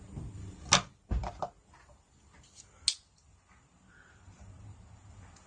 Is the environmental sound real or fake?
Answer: real